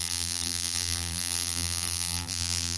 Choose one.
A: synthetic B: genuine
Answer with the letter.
A